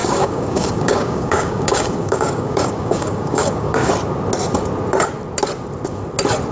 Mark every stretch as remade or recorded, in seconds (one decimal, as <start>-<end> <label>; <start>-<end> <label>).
0.0-3.9 remade; 3.9-6.5 recorded